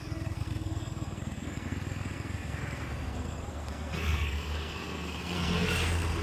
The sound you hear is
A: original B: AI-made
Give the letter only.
B